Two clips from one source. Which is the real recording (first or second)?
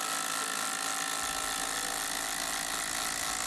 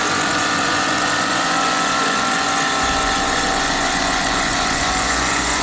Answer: first